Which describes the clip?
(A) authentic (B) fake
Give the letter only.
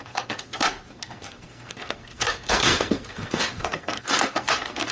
B